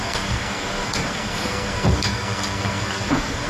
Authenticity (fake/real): fake